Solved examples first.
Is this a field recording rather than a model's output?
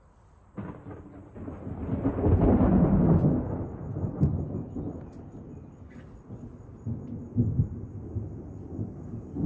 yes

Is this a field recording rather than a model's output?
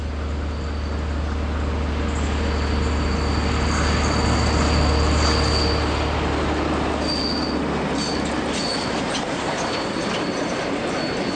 yes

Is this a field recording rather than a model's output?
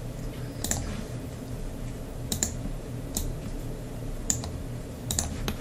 no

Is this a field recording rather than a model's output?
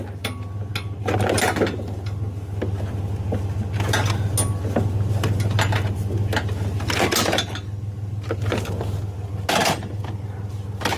yes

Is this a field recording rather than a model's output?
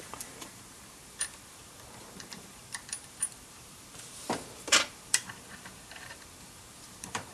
no